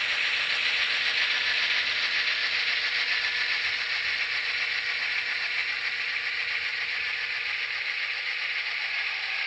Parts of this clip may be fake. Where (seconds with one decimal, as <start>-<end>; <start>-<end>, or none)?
none